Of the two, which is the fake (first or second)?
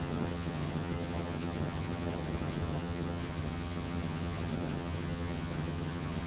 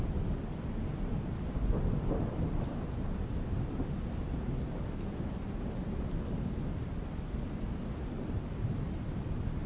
first